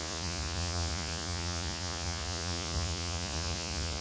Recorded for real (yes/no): no